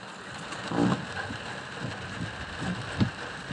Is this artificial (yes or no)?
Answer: no